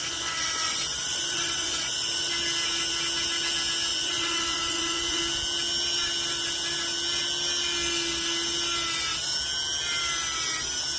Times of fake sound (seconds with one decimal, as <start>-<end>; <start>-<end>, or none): 0.0-2.3; 3.9-5.2